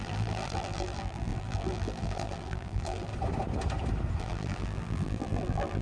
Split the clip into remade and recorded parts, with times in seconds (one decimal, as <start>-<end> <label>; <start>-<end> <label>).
0.0-3.1 remade; 3.1-4.2 recorded; 4.2-5.8 remade